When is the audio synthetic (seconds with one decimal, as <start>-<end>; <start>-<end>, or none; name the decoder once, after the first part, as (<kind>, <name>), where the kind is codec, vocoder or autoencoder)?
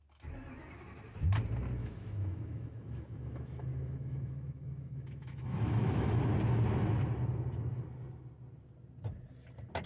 1.8-6.2 (autoencoder, DAC-VAE)